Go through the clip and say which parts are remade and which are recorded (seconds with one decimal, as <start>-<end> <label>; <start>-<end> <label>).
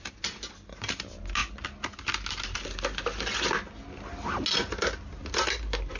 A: 0.0-6.0 recorded